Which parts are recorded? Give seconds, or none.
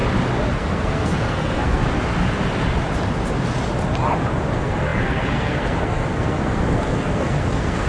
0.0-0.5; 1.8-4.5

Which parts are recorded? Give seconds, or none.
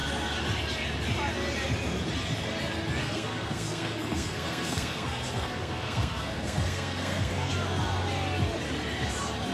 0.0-3.0; 7.5-9.5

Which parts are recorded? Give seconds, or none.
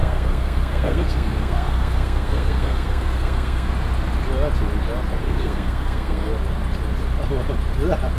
3.7-5.2; 6.3-8.2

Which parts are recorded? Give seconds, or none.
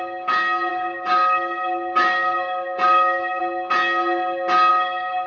0.0-0.7; 3.4-4.7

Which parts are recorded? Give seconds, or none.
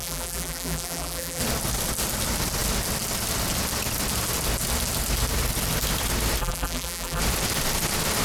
1.4-6.4; 7.2-8.2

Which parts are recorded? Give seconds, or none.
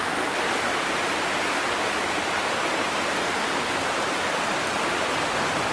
0.0-0.7; 4.1-5.7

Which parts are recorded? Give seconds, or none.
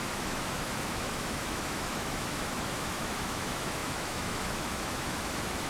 none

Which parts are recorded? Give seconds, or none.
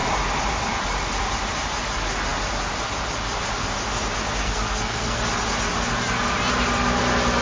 0.0-4.4; 5.2-7.4